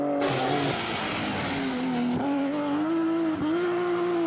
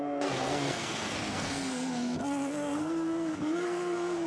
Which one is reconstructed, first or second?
second